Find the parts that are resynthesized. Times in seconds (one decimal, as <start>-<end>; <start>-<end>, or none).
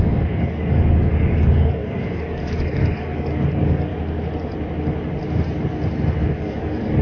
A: 0.0-3.9; 6.2-7.0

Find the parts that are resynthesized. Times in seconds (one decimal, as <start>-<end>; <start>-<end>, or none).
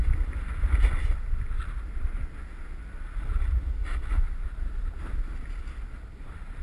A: 1.6-2.2; 4.1-5.0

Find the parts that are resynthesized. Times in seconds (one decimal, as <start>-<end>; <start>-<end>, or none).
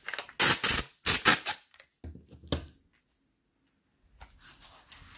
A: none